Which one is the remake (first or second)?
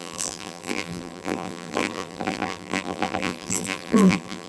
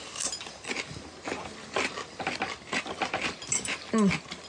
first